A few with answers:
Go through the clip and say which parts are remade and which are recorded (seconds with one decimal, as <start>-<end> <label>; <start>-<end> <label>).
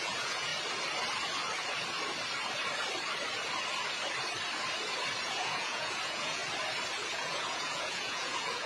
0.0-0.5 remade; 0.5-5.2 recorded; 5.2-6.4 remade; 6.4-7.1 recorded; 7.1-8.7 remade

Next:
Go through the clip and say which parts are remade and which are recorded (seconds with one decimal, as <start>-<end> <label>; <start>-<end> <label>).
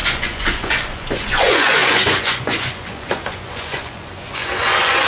0.0-5.1 remade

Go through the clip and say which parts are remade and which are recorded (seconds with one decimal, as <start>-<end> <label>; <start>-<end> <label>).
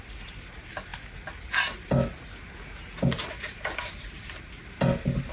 0.0-5.3 recorded